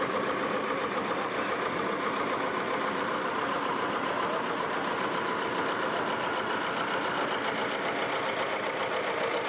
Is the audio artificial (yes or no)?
no